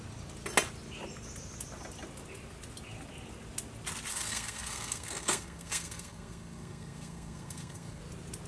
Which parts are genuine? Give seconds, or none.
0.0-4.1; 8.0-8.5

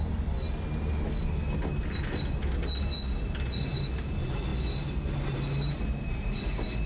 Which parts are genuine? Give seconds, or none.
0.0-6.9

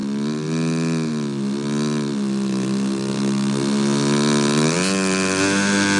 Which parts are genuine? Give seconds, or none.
0.0-6.0

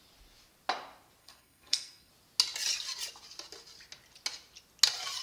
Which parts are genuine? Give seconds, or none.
0.0-1.2; 2.1-5.2

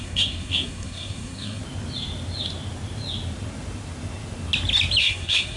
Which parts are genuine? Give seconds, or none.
1.6-5.0

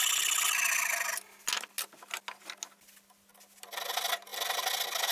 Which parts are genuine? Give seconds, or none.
0.0-5.1

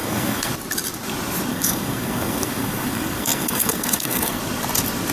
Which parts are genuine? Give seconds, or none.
0.5-1.5; 4.4-5.1